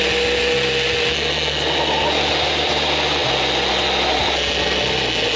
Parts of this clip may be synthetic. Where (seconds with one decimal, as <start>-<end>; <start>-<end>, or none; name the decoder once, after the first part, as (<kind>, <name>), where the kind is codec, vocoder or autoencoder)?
none